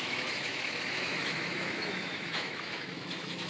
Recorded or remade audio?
remade